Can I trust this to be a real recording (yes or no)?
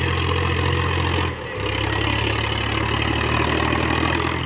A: yes